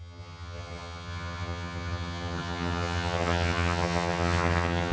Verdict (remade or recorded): remade